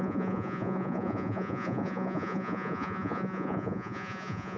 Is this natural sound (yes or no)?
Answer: no